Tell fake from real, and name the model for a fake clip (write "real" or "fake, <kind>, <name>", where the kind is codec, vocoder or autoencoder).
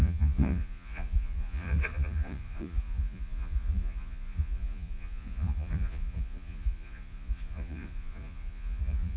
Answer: fake, vocoder, Vocos